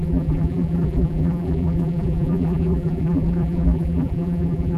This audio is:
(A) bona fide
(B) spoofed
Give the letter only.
B